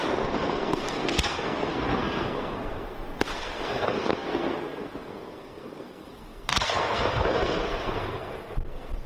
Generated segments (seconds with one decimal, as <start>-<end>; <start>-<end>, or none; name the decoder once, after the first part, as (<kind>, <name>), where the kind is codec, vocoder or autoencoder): 0.0-9.1 (codec, SNAC)